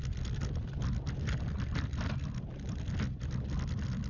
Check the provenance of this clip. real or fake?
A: real